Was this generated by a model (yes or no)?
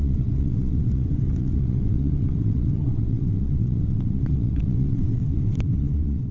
yes